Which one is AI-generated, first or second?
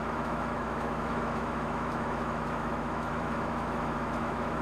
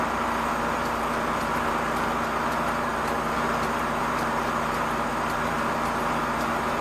first